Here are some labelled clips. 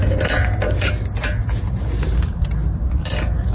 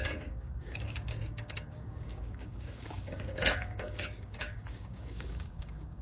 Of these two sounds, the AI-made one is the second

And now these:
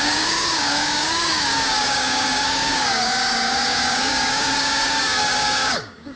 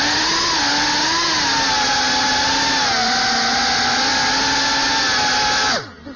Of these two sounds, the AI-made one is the first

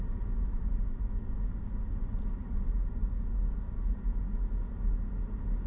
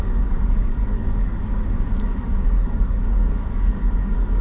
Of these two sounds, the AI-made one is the second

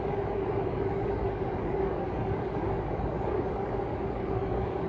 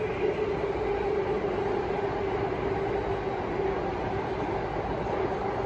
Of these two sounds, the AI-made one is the first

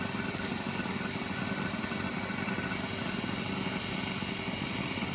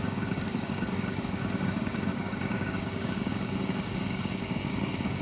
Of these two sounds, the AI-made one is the second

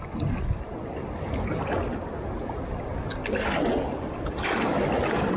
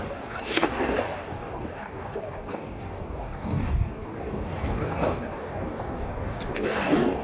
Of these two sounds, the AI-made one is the second